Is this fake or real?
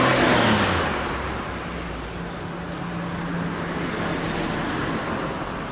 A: real